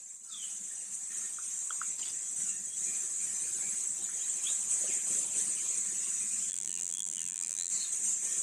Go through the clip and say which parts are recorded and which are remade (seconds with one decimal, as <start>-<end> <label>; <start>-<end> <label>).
0.0-6.5 recorded; 6.5-7.7 remade; 7.7-8.4 recorded